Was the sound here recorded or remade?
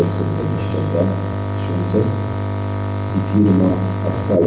remade